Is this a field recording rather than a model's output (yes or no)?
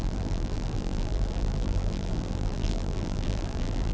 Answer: no